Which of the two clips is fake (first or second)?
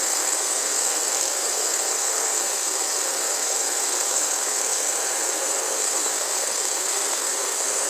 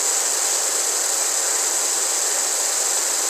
first